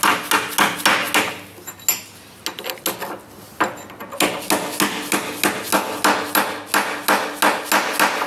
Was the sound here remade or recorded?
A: recorded